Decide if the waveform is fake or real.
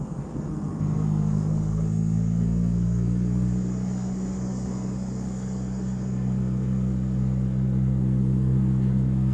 fake